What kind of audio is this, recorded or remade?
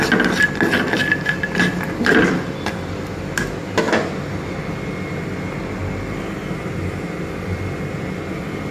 recorded